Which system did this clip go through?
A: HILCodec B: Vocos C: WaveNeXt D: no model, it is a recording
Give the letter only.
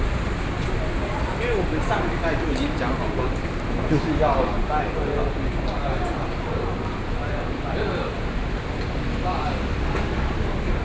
D